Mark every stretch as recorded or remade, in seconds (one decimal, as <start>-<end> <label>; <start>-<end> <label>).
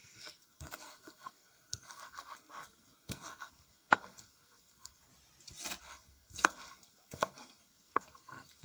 0.0-5.1 remade; 5.1-5.8 recorded; 5.8-8.6 remade